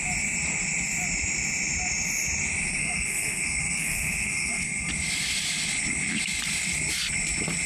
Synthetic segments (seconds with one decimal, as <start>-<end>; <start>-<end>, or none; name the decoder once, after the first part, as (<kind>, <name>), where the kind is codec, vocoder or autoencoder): 2.8-4.9 (codec, SNAC)